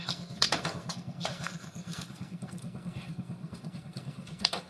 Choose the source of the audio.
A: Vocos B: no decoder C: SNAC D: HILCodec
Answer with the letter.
C